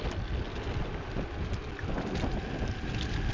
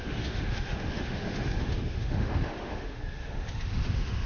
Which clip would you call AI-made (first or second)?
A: second